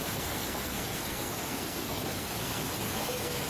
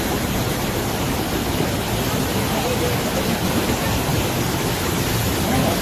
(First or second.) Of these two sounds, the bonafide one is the second